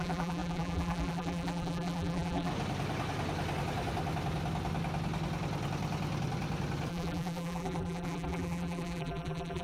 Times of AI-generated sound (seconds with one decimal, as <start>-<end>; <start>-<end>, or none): 0.0-2.5; 6.9-9.6

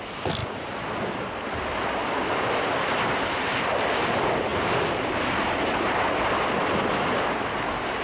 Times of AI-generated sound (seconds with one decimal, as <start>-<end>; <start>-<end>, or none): 0.4-1.1; 2.0-2.5; 4.5-7.5

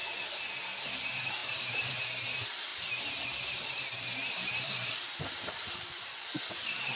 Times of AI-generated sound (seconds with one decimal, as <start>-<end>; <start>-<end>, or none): 1.4-1.9; 2.7-7.0

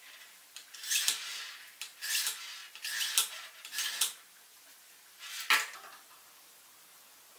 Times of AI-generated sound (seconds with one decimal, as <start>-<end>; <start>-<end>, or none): none

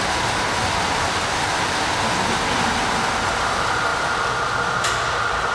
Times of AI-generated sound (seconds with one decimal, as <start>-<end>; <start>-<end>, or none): 0.6-3.5; 3.9-5.1

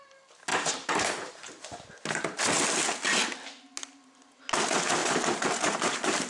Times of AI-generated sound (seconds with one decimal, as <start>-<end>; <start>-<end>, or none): 0.5-1.3; 5.0-6.3

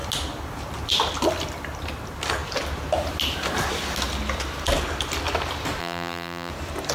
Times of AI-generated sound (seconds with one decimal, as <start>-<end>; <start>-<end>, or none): 5.8-6.5